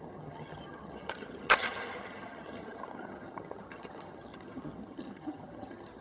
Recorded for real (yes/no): no